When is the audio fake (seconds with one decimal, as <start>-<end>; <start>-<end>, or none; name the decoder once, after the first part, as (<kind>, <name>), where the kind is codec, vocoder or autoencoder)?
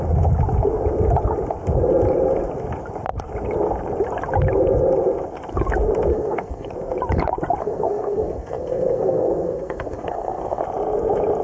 6.1-6.7 (codec, SNAC); 7.6-10.6